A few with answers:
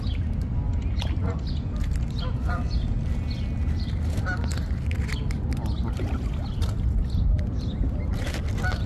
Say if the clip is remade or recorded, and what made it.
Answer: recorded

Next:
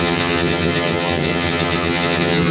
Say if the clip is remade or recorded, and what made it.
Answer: remade, vocoder, HiFi-GAN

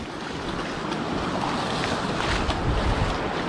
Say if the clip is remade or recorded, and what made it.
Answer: recorded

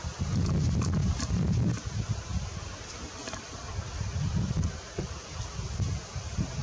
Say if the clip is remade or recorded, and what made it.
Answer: recorded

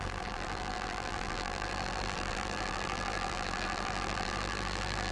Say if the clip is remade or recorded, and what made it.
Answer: remade, vocoder, BigVGAN v2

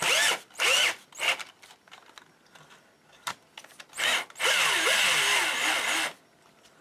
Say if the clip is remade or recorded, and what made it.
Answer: recorded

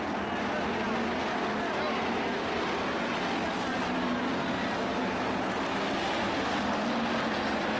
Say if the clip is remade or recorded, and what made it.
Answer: recorded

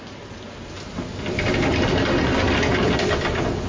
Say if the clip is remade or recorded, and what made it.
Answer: recorded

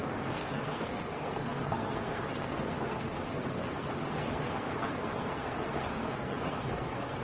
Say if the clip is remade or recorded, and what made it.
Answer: remade, codec, SNAC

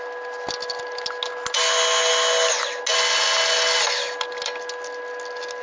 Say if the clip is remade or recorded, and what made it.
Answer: recorded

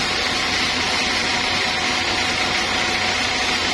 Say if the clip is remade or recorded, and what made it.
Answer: recorded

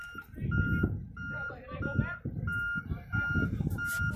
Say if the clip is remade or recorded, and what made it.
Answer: recorded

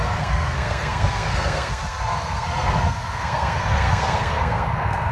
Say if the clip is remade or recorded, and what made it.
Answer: remade, codec, SNAC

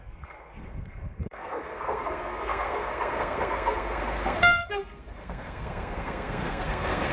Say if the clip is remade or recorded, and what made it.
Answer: remade, codec, SNAC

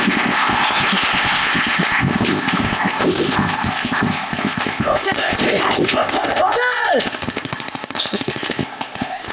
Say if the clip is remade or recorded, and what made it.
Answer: remade, codec, ZipCodec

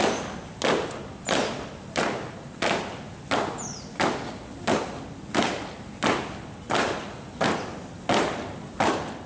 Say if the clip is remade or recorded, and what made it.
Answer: recorded